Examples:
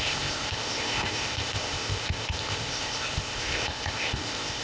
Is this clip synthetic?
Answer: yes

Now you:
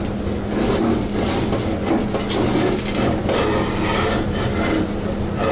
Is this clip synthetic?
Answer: no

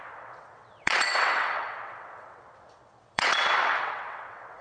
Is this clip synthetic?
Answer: yes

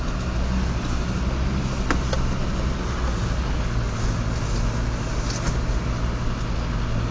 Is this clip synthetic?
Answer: no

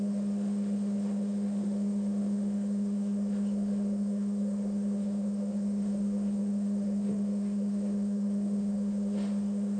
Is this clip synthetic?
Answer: yes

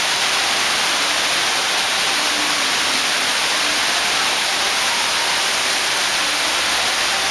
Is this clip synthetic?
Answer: no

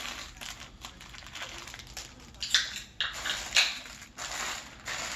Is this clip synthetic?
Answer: no